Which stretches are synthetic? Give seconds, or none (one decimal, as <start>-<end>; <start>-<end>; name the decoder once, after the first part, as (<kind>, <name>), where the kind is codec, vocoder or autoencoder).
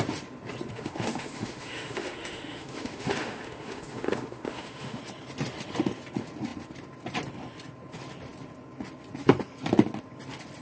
0.7-5.0 (autoencoder, DAC-VAE)